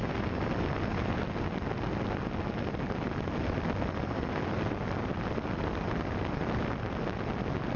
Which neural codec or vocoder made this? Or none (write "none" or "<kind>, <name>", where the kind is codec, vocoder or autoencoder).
none